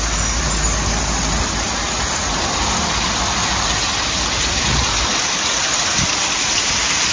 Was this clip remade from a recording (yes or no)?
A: no